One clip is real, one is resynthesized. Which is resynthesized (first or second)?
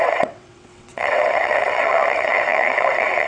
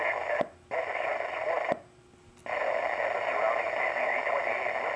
first